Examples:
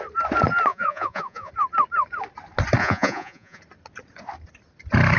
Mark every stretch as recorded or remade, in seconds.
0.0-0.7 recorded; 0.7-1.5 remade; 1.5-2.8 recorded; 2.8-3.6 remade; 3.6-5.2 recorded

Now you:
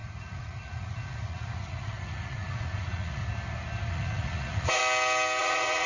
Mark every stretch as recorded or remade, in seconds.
0.0-3.2 remade; 3.2-3.9 recorded; 3.9-4.8 remade; 4.8-5.4 recorded; 5.4-5.9 remade

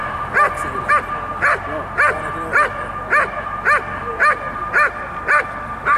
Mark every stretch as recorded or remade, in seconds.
0.0-6.0 recorded

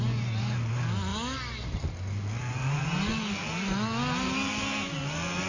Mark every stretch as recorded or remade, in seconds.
0.0-5.5 recorded

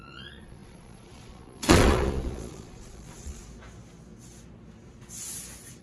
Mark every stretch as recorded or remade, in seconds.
0.0-3.4 remade; 3.4-5.8 recorded

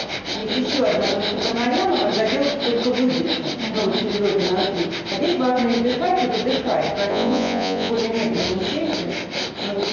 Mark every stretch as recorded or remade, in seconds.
0.0-7.1 recorded; 7.1-7.9 remade; 7.9-9.9 recorded

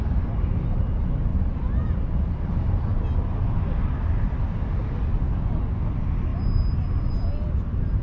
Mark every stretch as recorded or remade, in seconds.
0.0-8.0 recorded

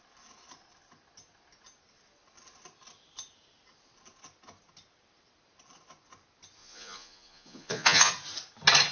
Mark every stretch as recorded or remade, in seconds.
0.0-6.6 recorded; 6.6-8.1 remade; 8.1-8.9 recorded